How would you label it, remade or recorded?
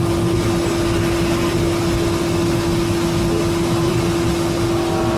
recorded